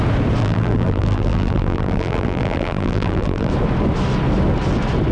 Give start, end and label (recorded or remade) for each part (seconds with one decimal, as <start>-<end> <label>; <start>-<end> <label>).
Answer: 0.0-0.4 recorded; 0.4-3.5 remade; 3.5-5.1 recorded